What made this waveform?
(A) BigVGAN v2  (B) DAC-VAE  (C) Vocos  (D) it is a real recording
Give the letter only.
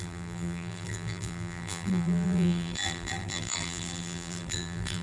A